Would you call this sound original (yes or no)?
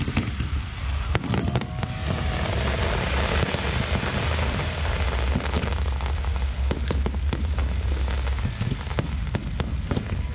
yes